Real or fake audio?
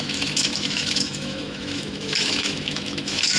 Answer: fake